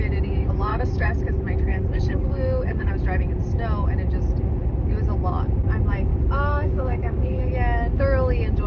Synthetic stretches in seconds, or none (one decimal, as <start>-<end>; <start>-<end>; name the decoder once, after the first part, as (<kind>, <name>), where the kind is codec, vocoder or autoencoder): 0.7-1.2 (codec, DAC); 1.7-2.9; 6.1-7.4